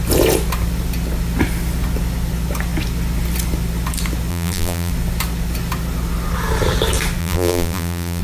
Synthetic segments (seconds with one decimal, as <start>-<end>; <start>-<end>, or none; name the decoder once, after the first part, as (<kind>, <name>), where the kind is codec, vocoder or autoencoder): 4.3-4.9 (vocoder, BigVGAN v2); 7.2-8.2